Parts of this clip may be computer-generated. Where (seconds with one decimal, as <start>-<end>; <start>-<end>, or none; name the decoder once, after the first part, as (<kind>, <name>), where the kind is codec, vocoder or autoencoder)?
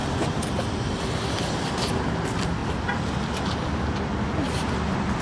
none